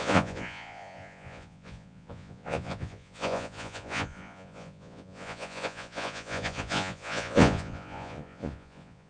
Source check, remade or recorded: remade